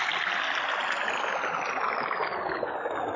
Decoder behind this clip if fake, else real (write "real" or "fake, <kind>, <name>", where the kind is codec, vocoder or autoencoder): real